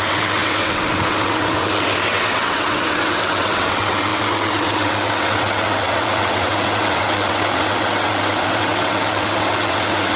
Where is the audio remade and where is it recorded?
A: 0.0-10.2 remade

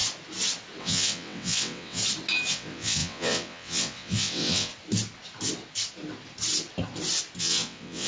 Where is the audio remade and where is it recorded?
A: 0.0-0.8 recorded; 0.8-2.0 remade; 2.0-2.5 recorded; 2.5-4.7 remade; 4.7-7.4 recorded; 7.4-8.1 remade